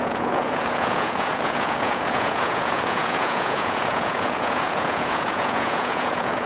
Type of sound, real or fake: fake